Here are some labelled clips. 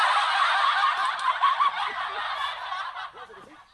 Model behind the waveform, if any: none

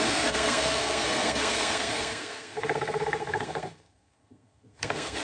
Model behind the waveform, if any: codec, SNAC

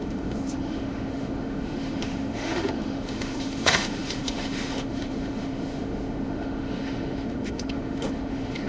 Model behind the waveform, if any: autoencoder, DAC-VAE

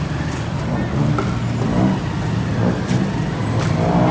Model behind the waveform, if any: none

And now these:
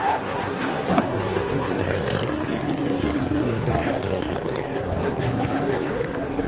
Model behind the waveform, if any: codec, SNAC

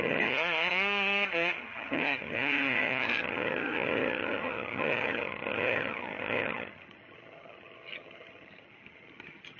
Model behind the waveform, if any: vocoder, HiFi-GAN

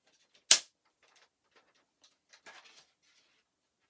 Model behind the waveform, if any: none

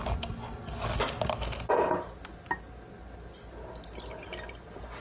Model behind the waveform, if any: none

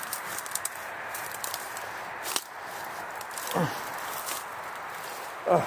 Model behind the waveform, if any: vocoder, BigVGAN v2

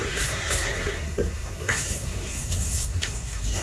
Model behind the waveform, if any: codec, SNAC